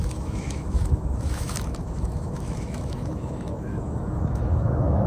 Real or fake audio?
fake